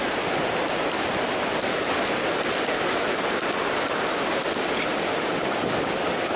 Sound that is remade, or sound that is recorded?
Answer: recorded